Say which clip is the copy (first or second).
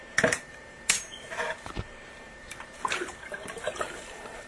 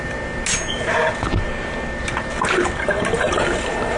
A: first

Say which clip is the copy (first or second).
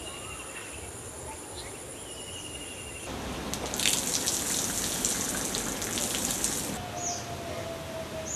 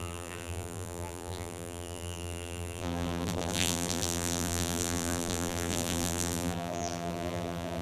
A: second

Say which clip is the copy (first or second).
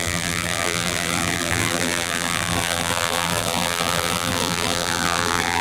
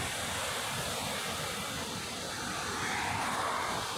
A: first